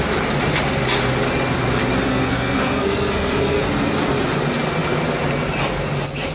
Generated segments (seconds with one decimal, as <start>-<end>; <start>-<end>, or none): 2.1-3.6